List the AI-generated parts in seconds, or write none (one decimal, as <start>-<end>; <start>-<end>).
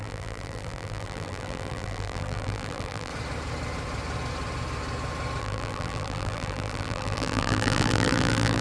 0.0-3.1; 5.4-8.6